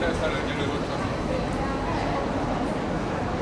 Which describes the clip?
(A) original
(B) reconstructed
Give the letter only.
A